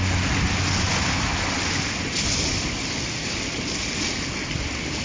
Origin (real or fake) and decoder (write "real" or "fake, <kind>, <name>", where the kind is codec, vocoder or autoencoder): real